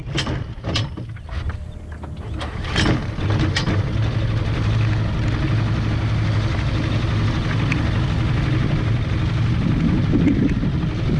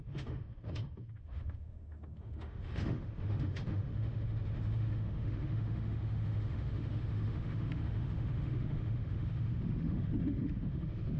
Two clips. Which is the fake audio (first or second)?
second